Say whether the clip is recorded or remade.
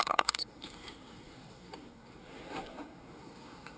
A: remade